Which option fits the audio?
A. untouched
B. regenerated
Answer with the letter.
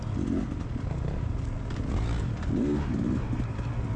A